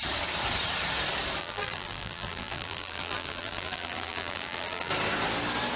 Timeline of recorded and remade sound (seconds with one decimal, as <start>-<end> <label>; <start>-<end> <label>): 0.0-1.4 recorded; 1.4-4.9 remade; 4.9-5.8 recorded